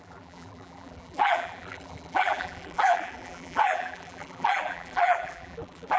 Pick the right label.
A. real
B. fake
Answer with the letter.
B